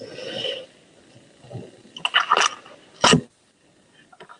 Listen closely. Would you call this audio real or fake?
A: real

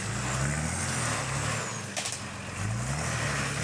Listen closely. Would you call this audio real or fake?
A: real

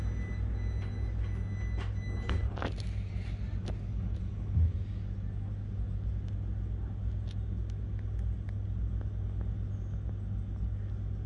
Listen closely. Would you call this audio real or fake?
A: real